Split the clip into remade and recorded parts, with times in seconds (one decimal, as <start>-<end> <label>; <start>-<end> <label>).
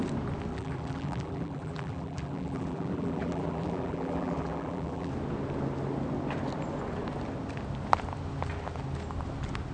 0.0-0.5 recorded; 0.5-5.1 remade; 5.1-9.7 recorded